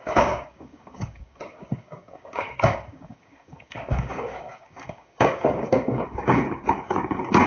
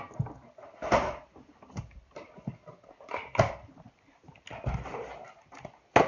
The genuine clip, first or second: second